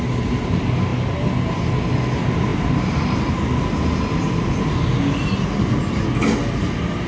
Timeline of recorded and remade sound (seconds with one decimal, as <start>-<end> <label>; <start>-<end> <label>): 0.0-7.1 recorded